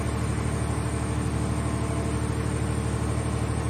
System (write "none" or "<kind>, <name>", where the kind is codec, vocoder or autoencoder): none